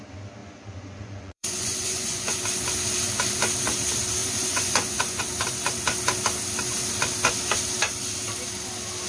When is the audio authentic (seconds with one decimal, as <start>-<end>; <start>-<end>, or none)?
0.0-0.4; 2.4-4.2; 5.2-9.1